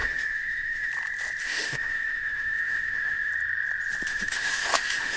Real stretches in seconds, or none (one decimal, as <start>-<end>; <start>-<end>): 0.9-1.4; 3.3-4.1